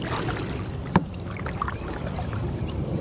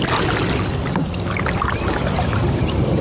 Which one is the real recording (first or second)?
second